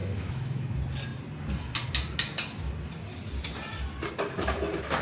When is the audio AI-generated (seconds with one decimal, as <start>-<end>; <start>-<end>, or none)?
0.0-0.7